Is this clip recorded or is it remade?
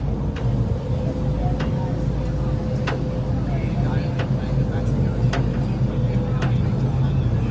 recorded